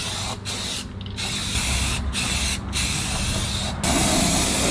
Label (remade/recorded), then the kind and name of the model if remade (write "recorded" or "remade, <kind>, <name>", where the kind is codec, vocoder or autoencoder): recorded